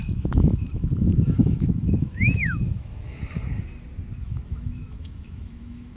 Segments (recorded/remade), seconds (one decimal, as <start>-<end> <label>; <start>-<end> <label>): 0.0-3.2 remade; 3.2-4.2 recorded; 4.2-6.0 remade